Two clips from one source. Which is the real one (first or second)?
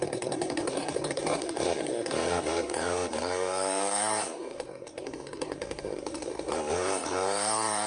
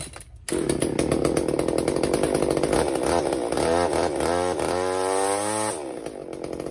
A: second